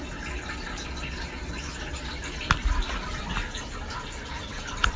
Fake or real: real